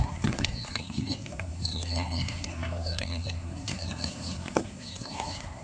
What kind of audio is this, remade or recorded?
remade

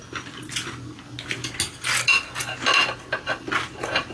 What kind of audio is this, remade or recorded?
recorded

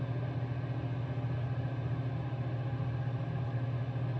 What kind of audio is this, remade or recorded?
recorded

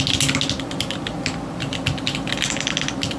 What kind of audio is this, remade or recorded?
recorded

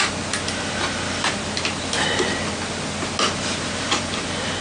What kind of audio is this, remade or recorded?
recorded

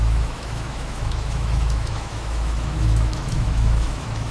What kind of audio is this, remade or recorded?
remade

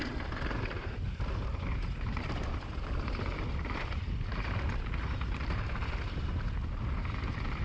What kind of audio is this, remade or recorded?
recorded